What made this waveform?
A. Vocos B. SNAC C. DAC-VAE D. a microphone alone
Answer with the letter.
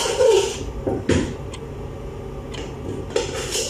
D